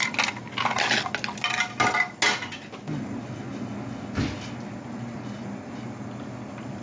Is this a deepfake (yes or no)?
no